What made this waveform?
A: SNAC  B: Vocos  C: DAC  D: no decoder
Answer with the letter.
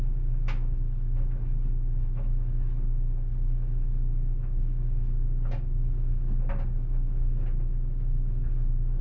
D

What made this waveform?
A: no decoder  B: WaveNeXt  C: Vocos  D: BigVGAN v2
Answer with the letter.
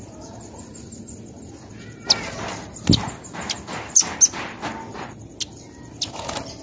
A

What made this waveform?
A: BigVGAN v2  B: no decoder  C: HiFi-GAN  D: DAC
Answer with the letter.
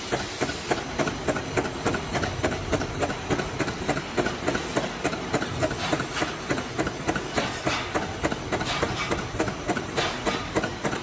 B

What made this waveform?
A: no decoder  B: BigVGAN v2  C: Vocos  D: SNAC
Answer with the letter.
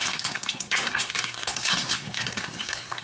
D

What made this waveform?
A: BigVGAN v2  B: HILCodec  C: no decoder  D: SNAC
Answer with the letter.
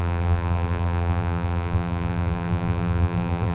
A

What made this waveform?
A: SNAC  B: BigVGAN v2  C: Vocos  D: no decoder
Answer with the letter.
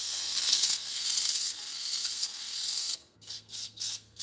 A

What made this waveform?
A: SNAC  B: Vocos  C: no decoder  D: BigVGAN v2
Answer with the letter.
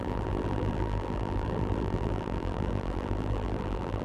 D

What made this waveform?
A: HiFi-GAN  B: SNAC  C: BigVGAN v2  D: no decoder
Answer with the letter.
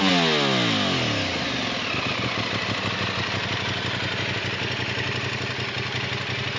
D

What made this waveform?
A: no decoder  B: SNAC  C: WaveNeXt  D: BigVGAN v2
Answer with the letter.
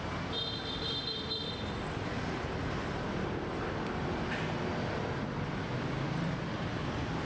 D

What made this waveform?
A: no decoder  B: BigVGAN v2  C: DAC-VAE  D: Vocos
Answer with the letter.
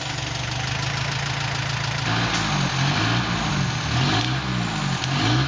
A